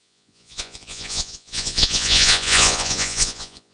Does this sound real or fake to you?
fake